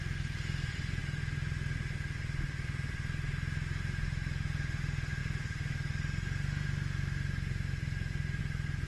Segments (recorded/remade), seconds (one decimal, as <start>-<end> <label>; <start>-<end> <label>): 0.0-8.9 recorded

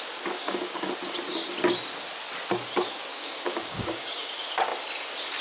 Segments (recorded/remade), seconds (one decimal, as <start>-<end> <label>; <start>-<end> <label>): 0.0-0.4 recorded; 0.4-0.9 remade; 0.9-3.1 recorded; 3.1-4.3 remade; 4.3-5.4 recorded

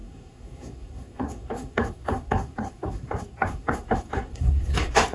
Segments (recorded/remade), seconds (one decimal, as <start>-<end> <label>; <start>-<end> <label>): 0.0-5.1 remade